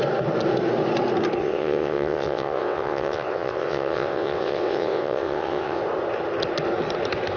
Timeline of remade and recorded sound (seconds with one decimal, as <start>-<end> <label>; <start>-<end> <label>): 0.0-1.4 recorded; 1.4-5.8 remade; 5.8-7.4 recorded